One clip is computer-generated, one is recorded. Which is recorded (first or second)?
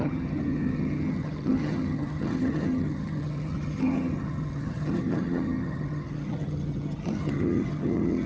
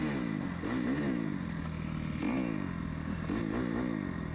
second